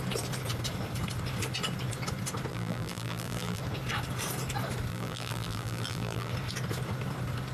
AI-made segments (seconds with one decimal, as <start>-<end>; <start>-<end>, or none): 2.5-3.6; 4.9-6.3